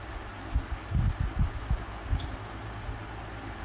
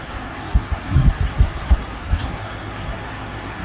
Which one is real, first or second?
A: first